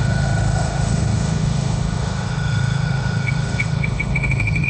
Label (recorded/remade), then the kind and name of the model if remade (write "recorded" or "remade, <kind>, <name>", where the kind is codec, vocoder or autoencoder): remade, autoencoder, DAC-VAE